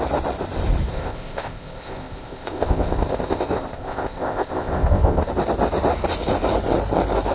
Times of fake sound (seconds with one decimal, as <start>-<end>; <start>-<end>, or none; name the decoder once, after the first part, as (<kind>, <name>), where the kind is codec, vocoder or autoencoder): 0.9-5.3 (codec, ZipCodec)